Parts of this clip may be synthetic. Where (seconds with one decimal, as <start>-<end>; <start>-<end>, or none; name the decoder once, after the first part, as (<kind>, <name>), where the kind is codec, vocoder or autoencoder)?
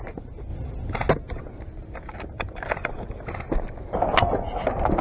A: 0.5-1.1 (vocoder, BigVGAN v2); 1.8-3.2